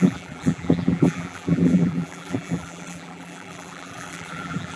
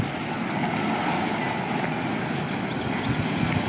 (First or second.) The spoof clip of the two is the first